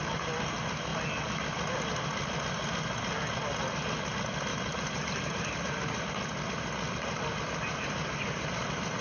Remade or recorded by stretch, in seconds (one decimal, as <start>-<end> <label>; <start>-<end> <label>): 0.0-4.5 recorded; 4.5-6.0 remade; 6.0-7.3 recorded; 7.3-8.6 remade; 8.6-9.0 recorded